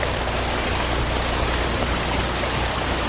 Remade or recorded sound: recorded